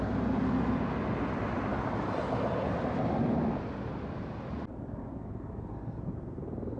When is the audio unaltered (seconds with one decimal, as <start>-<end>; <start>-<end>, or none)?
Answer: 0.0-6.8